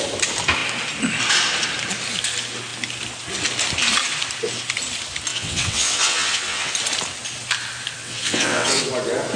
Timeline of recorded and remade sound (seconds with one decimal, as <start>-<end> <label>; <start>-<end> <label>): 0.0-5.3 recorded; 5.3-6.7 remade; 6.7-8.0 recorded; 8.0-8.9 remade; 8.9-9.4 recorded